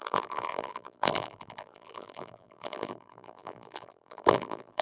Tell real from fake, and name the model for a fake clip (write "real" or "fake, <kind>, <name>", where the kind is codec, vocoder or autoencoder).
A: fake, vocoder, BigVGAN v2